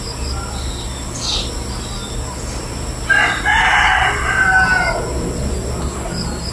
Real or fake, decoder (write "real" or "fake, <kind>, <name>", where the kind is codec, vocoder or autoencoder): real